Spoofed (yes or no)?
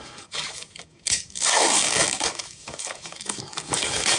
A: yes